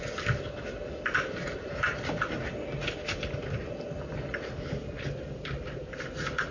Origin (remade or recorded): recorded